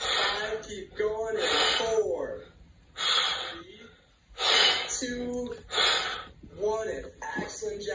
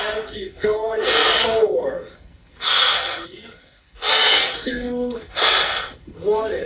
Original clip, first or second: first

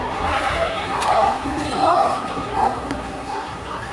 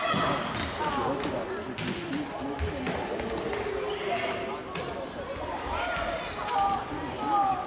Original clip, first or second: second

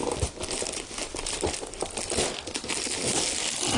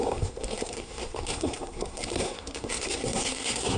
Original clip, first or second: first